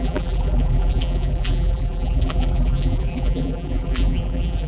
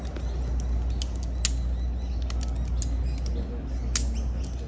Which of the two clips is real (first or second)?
second